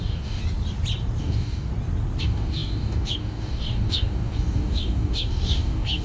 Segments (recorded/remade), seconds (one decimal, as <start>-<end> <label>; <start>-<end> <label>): 0.0-0.4 remade; 0.4-1.2 recorded; 1.2-1.7 remade; 1.7-2.2 recorded; 2.2-6.0 remade